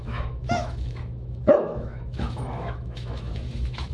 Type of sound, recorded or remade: remade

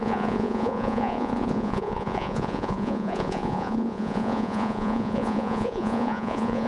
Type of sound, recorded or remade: remade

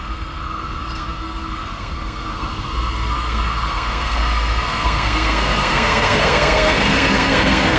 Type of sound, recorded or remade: remade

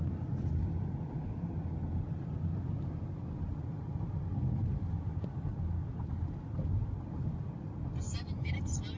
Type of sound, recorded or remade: recorded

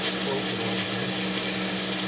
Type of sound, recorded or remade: recorded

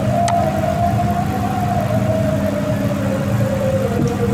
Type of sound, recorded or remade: recorded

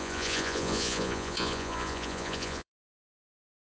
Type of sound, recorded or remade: remade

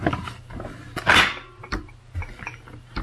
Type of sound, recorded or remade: recorded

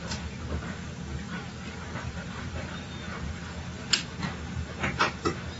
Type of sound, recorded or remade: recorded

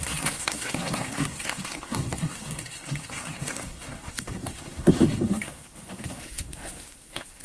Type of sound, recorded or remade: remade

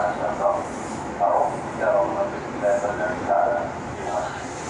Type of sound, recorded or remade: recorded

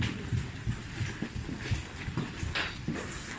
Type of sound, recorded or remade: recorded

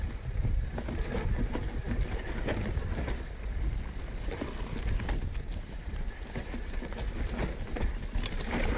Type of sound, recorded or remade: recorded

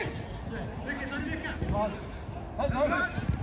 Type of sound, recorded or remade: recorded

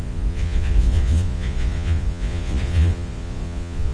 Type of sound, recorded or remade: remade